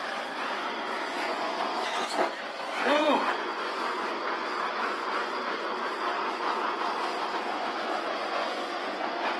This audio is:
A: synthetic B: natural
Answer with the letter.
A